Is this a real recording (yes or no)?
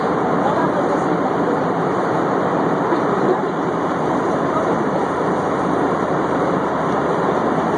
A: no